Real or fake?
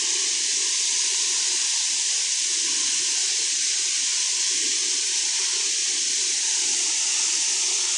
real